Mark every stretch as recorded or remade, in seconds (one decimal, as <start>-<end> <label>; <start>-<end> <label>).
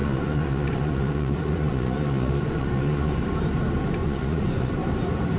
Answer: 0.0-3.2 remade; 3.2-4.0 recorded; 4.0-4.7 remade; 4.7-5.4 recorded